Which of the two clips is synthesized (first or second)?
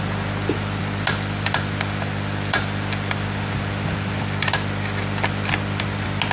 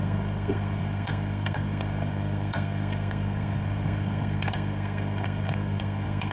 second